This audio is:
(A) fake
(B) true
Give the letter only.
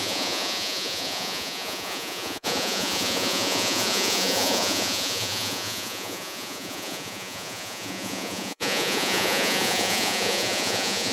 A